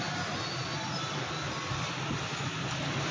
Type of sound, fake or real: real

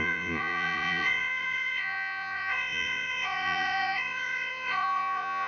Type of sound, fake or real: fake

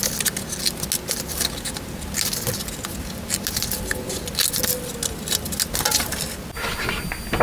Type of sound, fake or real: real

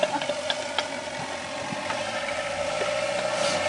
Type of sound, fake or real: real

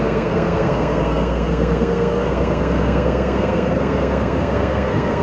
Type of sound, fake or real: fake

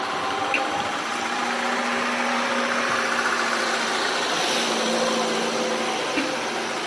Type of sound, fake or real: fake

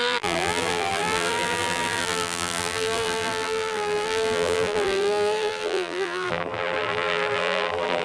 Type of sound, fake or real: fake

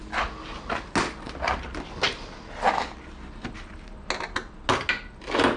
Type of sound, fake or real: real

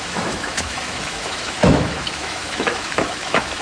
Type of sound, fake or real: fake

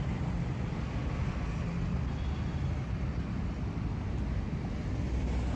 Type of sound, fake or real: real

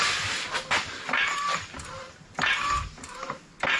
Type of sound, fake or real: real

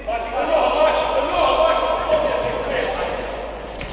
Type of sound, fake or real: fake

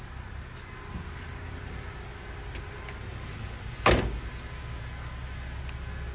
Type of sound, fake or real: real